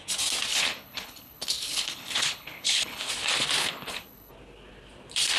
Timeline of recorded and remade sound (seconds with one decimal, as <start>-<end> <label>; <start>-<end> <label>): 0.0-0.5 recorded; 0.5-3.1 remade; 3.1-3.6 recorded; 3.6-4.3 remade; 4.3-5.4 recorded